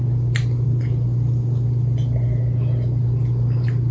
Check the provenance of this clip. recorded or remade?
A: recorded